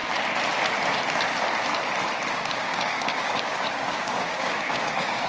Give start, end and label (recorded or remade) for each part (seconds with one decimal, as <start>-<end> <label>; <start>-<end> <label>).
0.0-2.3 recorded; 2.3-5.3 remade